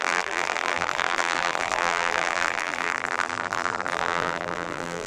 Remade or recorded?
remade